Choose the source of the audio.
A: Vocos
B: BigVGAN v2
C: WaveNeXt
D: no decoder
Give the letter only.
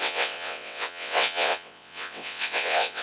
C